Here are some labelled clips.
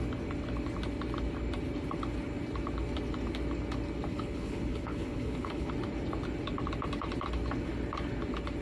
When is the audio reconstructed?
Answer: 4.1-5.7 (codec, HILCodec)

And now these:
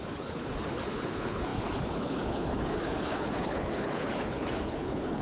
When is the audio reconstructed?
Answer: 0.0-5.2 (codec, HILCodec)

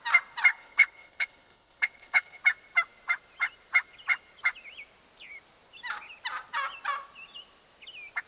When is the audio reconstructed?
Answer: 0.5-2.4 (codec, HILCodec)